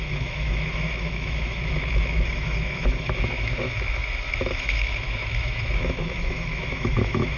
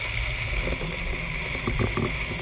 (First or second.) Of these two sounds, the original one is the second